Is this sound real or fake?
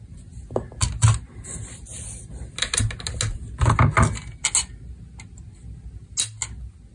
real